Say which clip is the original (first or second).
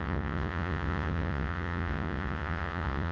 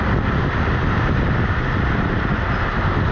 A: second